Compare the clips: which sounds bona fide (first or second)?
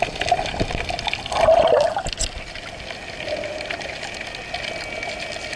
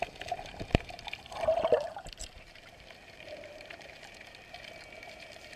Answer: first